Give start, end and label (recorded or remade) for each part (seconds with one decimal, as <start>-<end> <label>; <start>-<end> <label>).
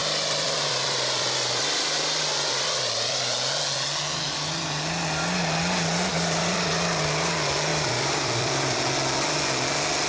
0.0-3.2 remade; 3.2-6.1 recorded; 6.1-6.7 remade; 6.7-7.7 recorded; 7.7-8.8 remade; 8.8-10.1 recorded